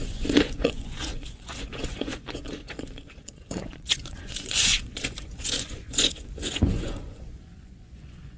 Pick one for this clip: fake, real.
fake